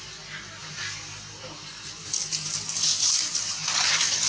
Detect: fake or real real